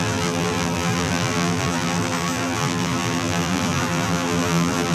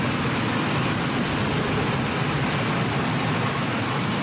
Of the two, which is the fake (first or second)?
first